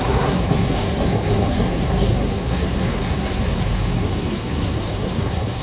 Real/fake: fake